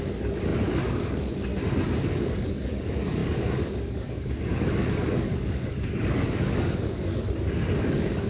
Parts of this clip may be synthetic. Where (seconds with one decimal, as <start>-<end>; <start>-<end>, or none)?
0.0-1.5; 2.0-8.3